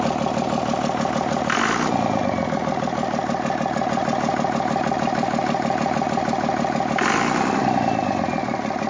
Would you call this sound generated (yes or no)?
no